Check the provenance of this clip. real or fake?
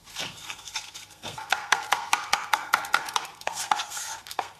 fake